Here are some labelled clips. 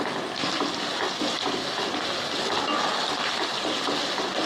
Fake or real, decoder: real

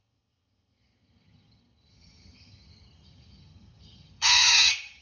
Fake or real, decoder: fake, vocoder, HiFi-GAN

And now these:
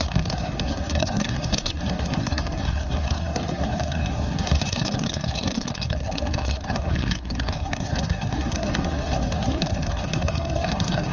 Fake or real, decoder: fake, codec, SNAC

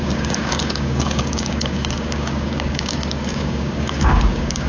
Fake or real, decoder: fake, codec, DAC